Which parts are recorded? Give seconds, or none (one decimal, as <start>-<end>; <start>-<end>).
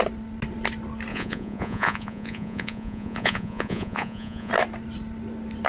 0.0-1.1; 4.5-5.7